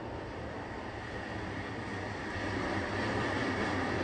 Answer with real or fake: fake